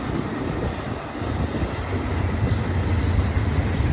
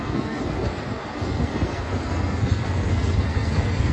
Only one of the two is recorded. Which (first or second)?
first